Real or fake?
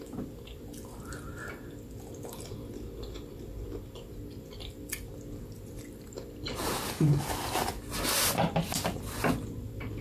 real